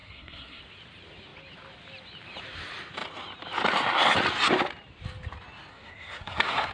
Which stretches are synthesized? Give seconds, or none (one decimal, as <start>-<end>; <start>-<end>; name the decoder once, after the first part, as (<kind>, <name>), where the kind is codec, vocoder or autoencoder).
0.0-0.6 (codec, SNAC); 5.7-6.7